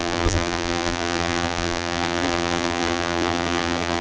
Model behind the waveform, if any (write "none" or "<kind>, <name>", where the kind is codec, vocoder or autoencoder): vocoder, BigVGAN v2